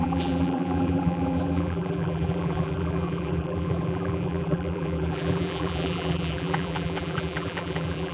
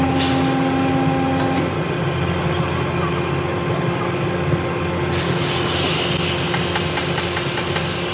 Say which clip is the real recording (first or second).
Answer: second